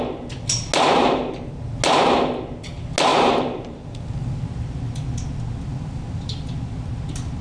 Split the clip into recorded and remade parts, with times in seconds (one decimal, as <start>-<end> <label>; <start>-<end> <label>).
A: 0.0-1.0 recorded; 1.0-1.6 remade; 1.6-3.1 recorded; 3.1-4.4 remade; 4.4-5.7 recorded; 5.7-6.2 remade; 6.2-7.4 recorded